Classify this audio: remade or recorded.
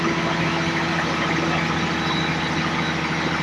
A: recorded